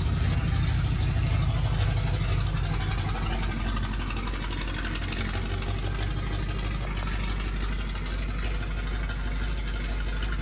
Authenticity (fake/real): real